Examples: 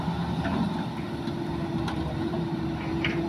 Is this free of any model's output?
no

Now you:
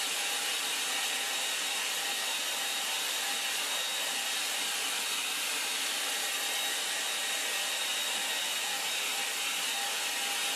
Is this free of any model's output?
yes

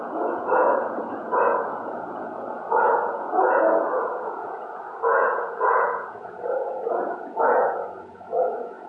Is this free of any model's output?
no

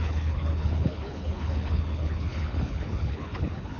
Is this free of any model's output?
no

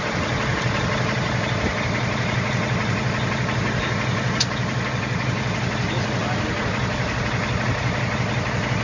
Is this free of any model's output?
yes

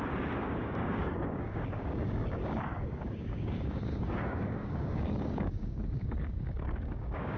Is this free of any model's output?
no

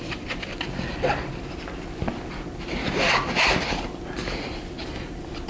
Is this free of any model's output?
yes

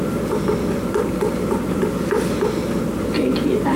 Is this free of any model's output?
yes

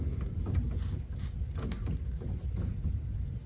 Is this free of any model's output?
yes